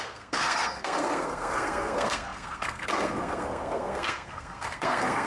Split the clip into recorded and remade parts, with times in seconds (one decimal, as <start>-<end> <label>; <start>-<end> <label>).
0.0-5.3 remade